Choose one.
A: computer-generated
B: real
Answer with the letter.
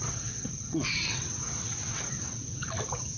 A